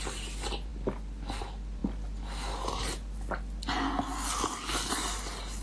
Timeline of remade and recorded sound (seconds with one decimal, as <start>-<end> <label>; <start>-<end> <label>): 0.0-5.6 recorded